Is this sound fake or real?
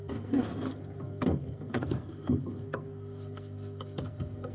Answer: fake